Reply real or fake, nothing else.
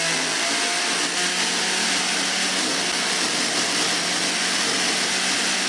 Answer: real